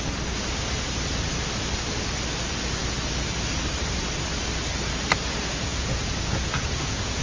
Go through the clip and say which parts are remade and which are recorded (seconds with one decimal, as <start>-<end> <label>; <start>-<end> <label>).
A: 0.0-5.7 recorded; 5.7-7.2 remade